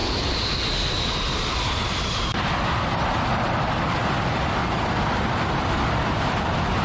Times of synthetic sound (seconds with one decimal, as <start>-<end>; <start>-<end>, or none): 0.0-6.8